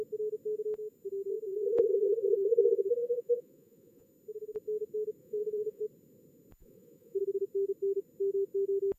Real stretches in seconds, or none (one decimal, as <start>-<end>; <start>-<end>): 0.0-1.5; 4.1-5.2; 5.8-6.6; 7.2-9.0